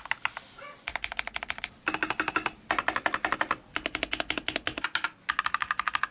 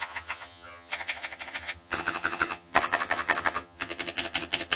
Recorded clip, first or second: first